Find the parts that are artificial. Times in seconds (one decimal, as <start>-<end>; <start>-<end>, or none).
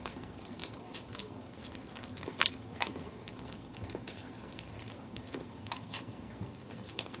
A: 0.0-7.2